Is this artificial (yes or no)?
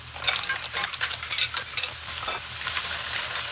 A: no